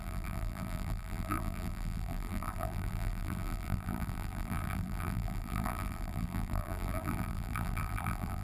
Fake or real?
fake